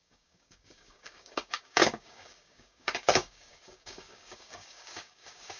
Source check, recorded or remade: remade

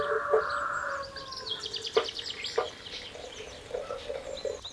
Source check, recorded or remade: recorded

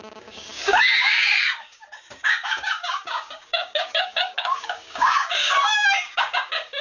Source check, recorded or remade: remade